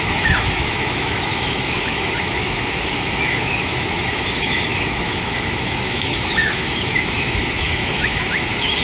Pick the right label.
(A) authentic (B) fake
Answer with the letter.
B